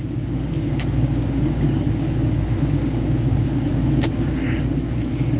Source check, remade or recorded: remade